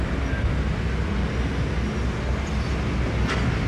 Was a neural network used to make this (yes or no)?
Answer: no